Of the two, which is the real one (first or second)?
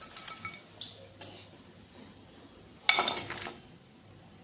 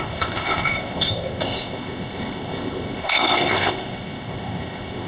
first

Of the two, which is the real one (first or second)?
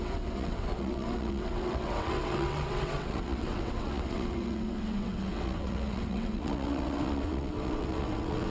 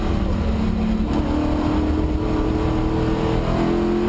second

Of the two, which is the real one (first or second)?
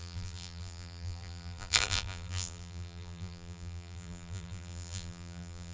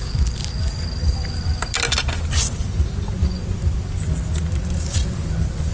second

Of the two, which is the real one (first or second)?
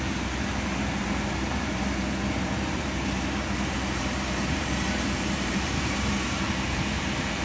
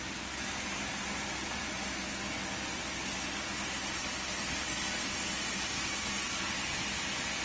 second